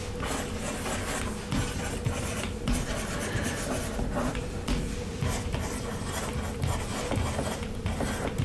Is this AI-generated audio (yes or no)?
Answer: no